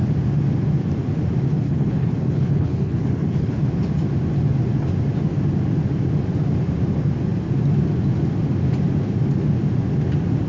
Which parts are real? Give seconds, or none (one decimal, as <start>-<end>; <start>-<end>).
0.0-1.5; 3.6-10.5